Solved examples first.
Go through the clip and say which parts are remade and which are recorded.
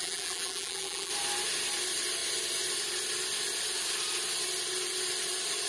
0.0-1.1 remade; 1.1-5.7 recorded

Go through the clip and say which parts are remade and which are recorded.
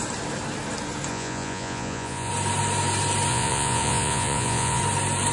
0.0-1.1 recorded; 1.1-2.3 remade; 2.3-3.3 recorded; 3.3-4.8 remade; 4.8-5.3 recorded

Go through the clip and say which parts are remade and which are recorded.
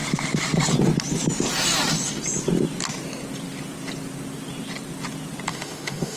0.0-5.5 recorded; 5.5-6.2 remade